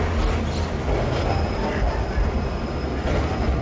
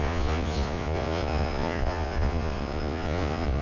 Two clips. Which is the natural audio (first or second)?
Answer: first